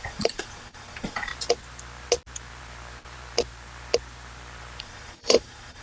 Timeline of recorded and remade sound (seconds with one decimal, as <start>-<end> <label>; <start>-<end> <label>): 0.0-1.3 remade; 1.3-4.8 recorded; 4.8-5.8 remade